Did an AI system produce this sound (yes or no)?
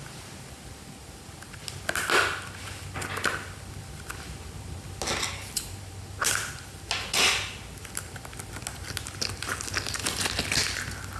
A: no